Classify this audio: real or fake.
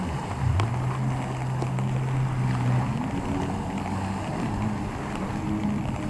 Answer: real